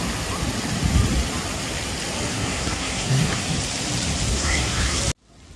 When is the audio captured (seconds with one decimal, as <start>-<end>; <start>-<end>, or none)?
0.0-2.3; 3.4-4.3; 5.0-5.6